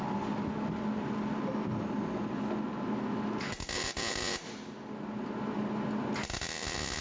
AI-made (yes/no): no